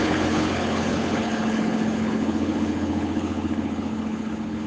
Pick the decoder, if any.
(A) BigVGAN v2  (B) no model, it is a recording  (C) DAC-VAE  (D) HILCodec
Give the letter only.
D